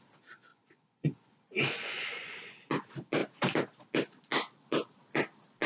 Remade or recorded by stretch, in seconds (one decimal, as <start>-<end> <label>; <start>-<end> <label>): 0.0-0.5 recorded; 0.5-2.6 remade; 2.6-5.7 recorded